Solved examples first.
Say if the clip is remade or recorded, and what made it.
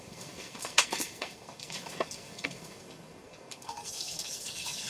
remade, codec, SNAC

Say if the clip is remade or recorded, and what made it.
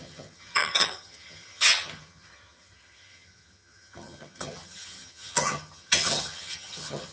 remade, vocoder, HiFi-GAN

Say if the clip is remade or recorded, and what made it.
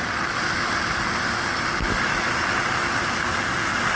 recorded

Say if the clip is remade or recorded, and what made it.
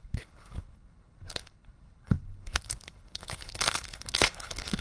remade, codec, HILCodec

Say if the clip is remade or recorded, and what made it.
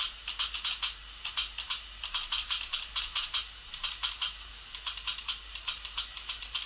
remade, vocoder, BigVGAN v2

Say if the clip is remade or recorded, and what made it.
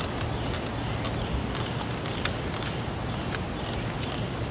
recorded